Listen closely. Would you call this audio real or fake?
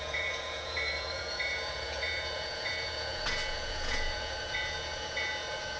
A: fake